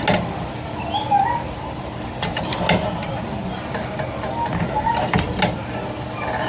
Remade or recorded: recorded